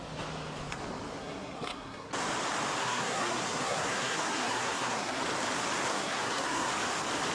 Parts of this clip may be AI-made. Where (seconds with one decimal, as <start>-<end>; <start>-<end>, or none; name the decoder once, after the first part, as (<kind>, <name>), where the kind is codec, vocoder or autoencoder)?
1.2-2.1 (codec, SNAC); 2.8-5.2; 5.9-6.7